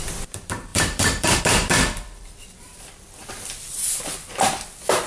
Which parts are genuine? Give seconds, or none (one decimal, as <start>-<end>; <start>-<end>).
none